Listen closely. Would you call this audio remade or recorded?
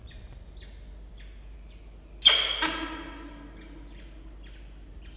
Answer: recorded